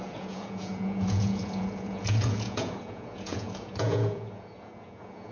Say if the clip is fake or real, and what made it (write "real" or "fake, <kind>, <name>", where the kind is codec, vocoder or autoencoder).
fake, vocoder, Vocos